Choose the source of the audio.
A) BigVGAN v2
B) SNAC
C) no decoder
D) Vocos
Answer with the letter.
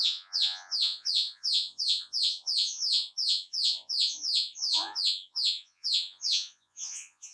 D